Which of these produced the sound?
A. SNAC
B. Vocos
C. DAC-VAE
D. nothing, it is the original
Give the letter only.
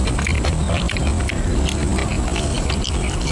D